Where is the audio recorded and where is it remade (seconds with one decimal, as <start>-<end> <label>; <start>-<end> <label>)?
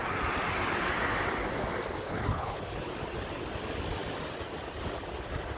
0.0-2.0 recorded; 2.0-2.9 remade; 2.9-5.6 recorded